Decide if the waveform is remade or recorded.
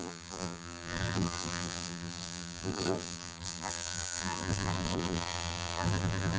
remade